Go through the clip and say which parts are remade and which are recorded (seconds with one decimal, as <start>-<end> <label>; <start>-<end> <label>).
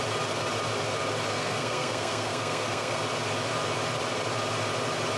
0.0-1.3 recorded; 1.3-3.0 remade; 3.0-5.2 recorded